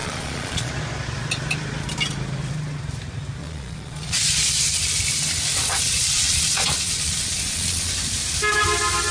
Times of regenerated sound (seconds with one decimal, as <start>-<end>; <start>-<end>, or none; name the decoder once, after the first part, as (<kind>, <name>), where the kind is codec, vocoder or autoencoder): 0.0-0.7 (vocoder, Vocos); 3.4-4.5; 5.5-7.9